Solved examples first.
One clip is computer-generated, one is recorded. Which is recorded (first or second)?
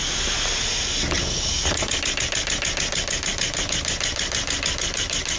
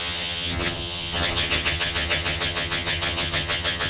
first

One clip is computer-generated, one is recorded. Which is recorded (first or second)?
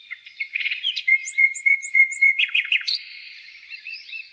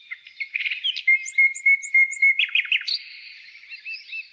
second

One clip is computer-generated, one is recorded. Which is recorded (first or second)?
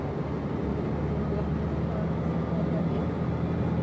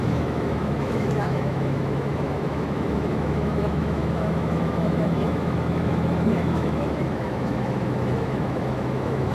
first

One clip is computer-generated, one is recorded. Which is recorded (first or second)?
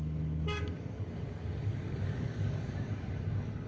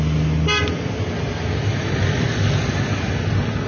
second